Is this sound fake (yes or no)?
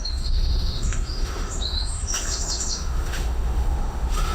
yes